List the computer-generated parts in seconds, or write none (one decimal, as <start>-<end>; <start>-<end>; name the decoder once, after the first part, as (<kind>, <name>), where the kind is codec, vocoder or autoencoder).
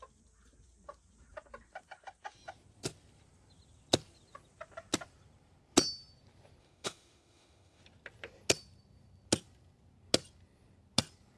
6.6-7.8 (autoencoder, DAC-VAE)